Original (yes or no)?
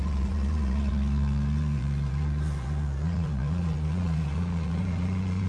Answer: no